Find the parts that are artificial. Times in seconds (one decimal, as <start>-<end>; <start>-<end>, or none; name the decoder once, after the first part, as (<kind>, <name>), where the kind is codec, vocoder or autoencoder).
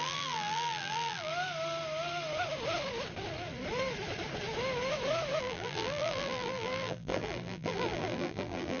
0.0-1.3 (vocoder, BigVGAN v2); 5.4-8.8